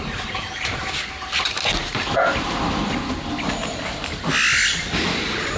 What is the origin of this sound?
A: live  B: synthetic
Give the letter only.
A